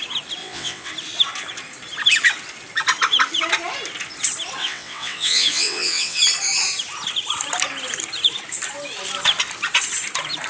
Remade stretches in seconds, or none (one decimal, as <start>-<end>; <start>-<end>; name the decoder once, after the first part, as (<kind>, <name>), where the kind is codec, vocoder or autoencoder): 0.4-0.9 (vocoder, WaveNeXt); 4.6-6.2